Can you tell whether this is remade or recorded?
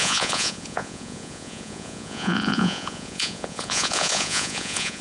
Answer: remade